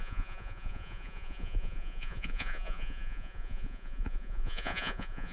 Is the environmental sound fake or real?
fake